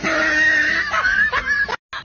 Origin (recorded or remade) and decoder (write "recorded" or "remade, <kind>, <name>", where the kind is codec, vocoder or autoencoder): recorded